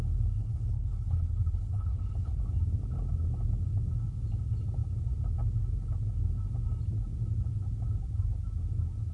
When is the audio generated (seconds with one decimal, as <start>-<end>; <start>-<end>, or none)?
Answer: 0.4-2.4